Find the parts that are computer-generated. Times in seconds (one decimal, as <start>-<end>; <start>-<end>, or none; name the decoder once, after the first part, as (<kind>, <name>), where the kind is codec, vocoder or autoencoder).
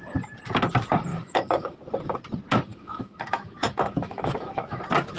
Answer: 1.1-1.8 (autoencoder, DAC-VAE); 2.7-4.8